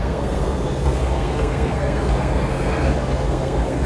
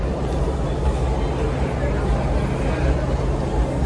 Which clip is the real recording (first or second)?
second